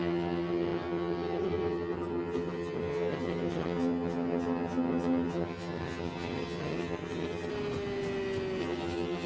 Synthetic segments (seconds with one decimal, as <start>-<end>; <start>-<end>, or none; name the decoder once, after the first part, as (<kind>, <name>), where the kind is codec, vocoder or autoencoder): 0.0-7.5 (vocoder, HiFi-GAN); 8.6-9.3